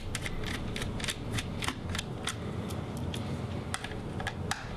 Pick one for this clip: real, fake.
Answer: real